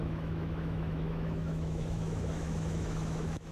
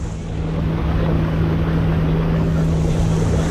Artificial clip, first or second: first